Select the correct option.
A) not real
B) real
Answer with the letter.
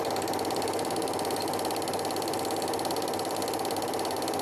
B